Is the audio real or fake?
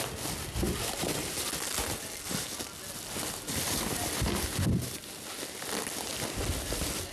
real